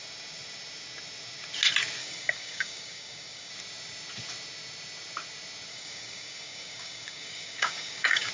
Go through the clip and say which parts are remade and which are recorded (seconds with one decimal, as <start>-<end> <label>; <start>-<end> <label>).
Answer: 0.0-2.0 recorded; 2.0-3.5 remade; 3.5-5.7 recorded; 5.7-8.3 remade